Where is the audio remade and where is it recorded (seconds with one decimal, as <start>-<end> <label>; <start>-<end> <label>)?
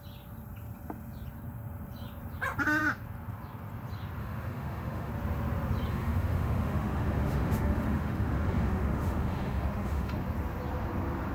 0.0-4.2 recorded; 4.2-5.1 remade; 5.1-5.9 recorded; 5.9-10.1 remade; 10.1-11.3 recorded